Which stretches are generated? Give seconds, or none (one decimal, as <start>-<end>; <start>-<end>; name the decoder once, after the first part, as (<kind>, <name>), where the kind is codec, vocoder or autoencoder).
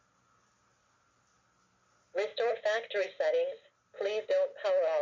none